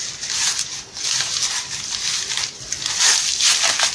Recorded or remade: recorded